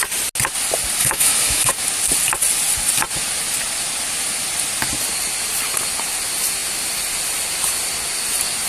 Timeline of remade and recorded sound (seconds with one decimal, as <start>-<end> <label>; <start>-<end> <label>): 0.0-1.0 recorded; 1.0-1.7 remade; 1.7-8.7 recorded